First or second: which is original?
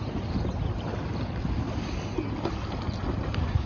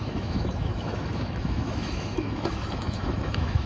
first